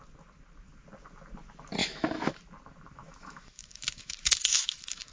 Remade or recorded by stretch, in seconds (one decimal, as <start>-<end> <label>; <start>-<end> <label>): 0.0-1.8 recorded; 1.8-2.4 remade; 2.4-3.0 recorded; 3.0-5.1 remade